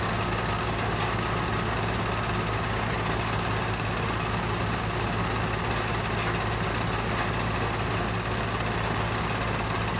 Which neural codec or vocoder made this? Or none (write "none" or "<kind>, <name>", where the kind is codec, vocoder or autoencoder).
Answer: none